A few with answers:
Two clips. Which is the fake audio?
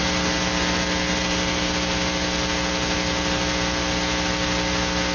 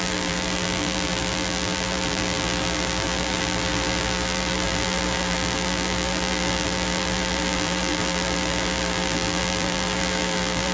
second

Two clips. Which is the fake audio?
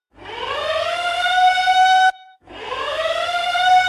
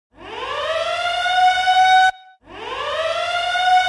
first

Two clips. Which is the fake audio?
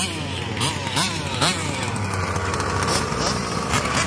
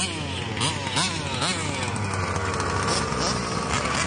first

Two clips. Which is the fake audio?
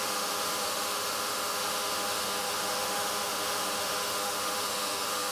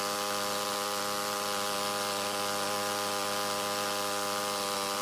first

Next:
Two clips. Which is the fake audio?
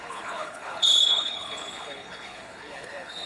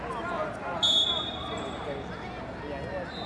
first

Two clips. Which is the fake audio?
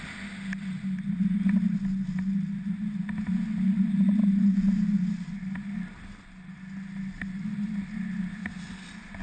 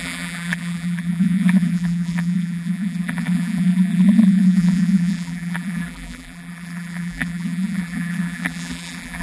second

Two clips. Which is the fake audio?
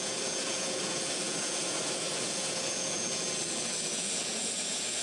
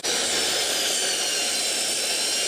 first